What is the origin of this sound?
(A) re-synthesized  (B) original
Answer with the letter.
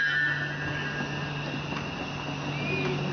B